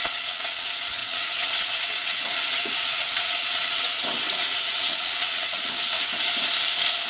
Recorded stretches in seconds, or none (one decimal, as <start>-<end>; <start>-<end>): 6.1-7.1